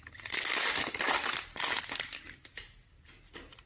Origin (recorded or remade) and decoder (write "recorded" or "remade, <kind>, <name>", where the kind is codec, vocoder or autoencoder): recorded